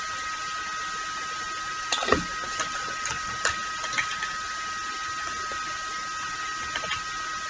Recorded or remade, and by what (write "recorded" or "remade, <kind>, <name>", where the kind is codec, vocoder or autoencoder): recorded